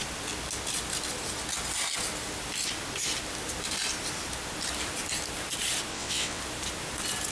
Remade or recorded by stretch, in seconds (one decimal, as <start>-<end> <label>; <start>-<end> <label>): 0.0-5.9 recorded; 5.9-6.4 remade; 6.4-7.3 recorded